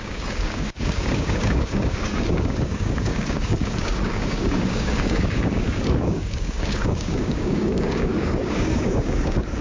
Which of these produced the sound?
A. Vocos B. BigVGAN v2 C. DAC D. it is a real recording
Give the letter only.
C